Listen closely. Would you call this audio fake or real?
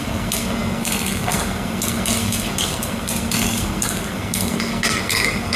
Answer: fake